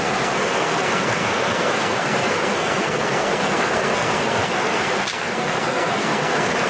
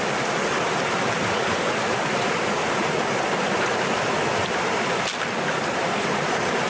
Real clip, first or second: second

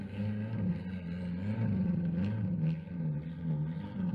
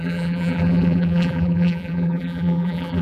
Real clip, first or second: first